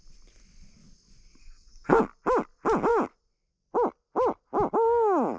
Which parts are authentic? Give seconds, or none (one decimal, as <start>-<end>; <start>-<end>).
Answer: 0.0-1.4; 2.0-5.4